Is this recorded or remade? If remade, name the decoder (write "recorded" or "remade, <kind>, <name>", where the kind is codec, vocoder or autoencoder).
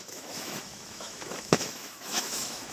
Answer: remade, autoencoder, DAC-VAE